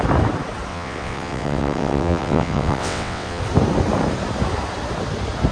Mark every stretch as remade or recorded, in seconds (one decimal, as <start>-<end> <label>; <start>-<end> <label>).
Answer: 0.0-0.7 recorded; 0.7-3.4 remade; 3.4-5.5 recorded